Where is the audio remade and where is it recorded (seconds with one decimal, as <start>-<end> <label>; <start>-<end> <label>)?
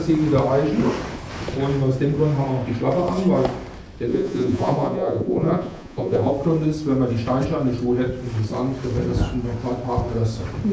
0.0-4.1 recorded; 4.1-6.3 remade; 6.3-10.7 recorded